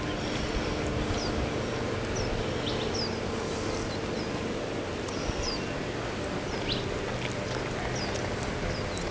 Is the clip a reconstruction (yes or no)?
no